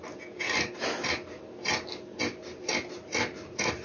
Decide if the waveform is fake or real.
real